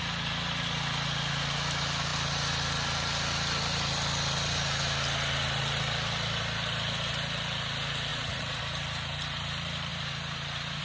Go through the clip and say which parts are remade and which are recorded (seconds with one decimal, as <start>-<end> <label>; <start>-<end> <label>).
0.0-8.1 recorded; 8.1-8.6 remade; 8.6-10.8 recorded

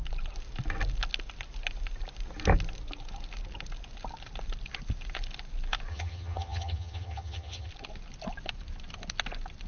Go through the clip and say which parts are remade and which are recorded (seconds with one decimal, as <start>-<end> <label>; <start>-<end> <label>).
0.0-5.9 recorded; 5.9-7.7 remade; 7.7-9.7 recorded

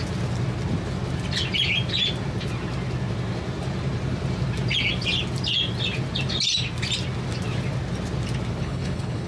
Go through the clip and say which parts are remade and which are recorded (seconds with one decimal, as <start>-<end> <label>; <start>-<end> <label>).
0.0-8.6 recorded; 8.6-9.3 remade

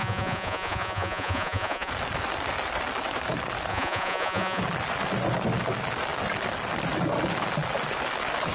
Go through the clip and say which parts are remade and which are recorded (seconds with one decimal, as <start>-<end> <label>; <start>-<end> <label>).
0.0-1.9 remade; 1.9-3.7 recorded; 3.7-4.6 remade; 4.6-8.5 recorded